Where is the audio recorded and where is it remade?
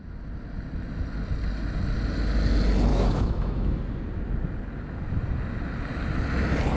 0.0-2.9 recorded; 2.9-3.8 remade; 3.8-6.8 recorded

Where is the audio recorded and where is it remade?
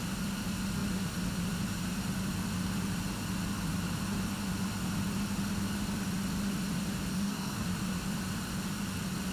0.0-7.1 recorded; 7.1-7.6 remade; 7.6-9.3 recorded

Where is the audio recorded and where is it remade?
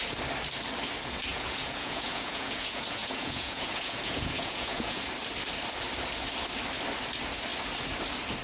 0.0-1.3 recorded; 1.3-5.0 remade; 5.0-8.4 recorded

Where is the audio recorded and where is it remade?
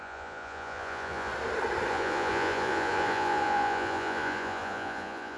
0.0-1.3 remade; 1.3-1.9 recorded; 1.9-5.4 remade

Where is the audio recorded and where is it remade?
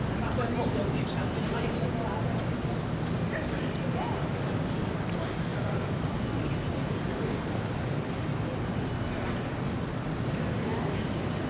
0.0-11.5 recorded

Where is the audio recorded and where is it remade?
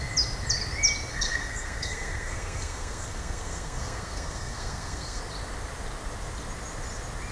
0.0-1.1 recorded; 1.1-5.2 remade; 5.2-7.3 recorded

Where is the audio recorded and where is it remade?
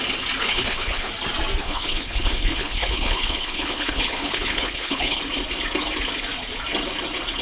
0.0-0.4 recorded; 0.4-1.1 remade; 1.1-1.6 recorded; 1.6-5.2 remade; 5.2-7.4 recorded